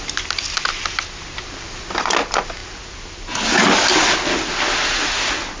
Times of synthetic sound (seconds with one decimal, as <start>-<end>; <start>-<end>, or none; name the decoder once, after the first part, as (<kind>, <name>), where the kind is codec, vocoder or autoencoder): none